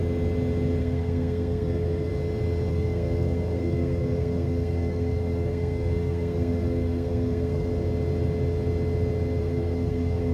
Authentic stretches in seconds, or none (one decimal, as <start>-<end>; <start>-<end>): 0.0-0.8; 2.1-2.7; 7.7-9.4